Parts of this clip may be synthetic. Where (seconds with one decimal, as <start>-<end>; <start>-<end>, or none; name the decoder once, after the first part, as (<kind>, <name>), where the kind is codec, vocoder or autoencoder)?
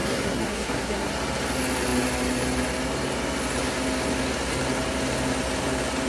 0.0-1.1 (codec, SNAC)